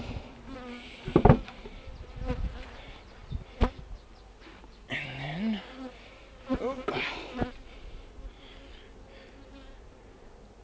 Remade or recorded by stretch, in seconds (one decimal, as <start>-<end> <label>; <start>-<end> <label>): 0.0-10.6 recorded